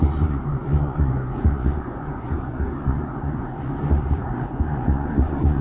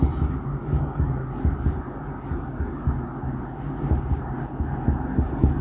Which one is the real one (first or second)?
second